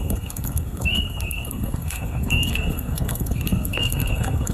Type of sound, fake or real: fake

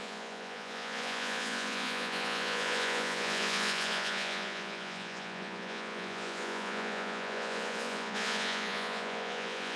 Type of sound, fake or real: fake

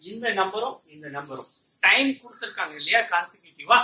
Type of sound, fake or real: real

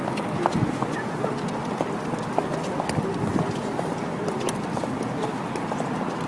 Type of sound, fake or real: real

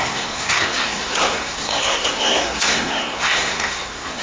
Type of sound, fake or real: fake